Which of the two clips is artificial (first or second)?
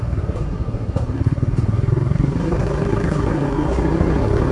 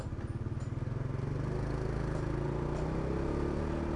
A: first